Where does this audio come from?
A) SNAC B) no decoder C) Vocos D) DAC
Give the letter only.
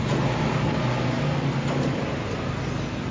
B